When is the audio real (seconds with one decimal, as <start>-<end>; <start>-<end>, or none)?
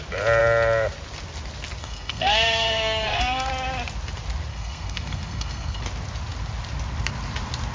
0.0-1.8; 3.5-4.5; 5.8-7.7